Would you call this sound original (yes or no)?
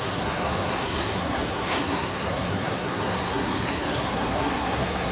no